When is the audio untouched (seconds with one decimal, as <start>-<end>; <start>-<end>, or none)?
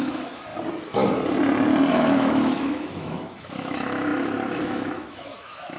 0.5-1.9